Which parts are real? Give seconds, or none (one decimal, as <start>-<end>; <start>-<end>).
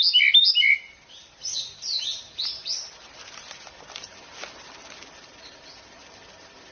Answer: 0.0-6.7